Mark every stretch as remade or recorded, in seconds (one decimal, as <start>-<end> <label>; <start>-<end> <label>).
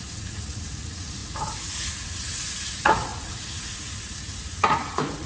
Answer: 0.0-5.3 remade